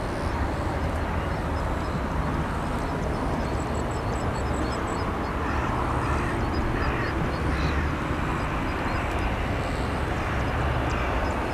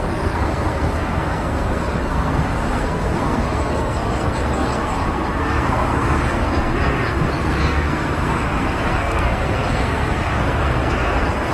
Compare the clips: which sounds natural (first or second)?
first